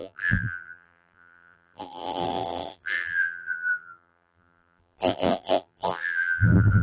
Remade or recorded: remade